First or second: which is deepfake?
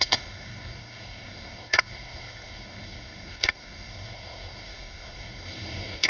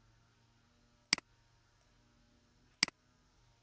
first